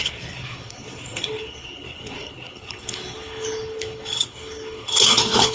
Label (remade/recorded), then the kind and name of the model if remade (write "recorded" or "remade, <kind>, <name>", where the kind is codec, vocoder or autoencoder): remade, codec, HILCodec